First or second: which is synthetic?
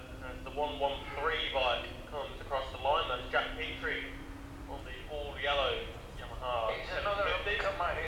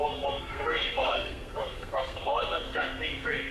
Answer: second